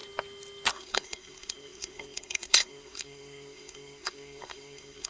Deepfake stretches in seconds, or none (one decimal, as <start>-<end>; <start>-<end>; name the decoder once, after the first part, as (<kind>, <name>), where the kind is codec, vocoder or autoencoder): 0.7-5.1 (codec, SNAC)